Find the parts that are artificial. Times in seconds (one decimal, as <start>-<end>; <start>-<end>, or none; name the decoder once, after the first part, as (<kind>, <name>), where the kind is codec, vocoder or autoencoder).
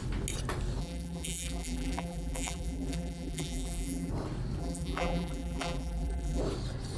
0.8-4.1 (vocoder, BigVGAN v2); 4.6-6.4